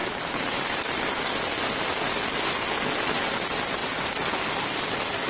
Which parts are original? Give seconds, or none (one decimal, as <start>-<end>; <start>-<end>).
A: 1.2-5.3